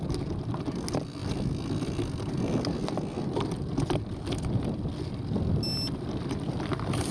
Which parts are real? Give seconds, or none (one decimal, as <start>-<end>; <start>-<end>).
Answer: 0.0-7.1